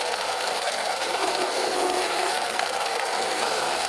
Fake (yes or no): yes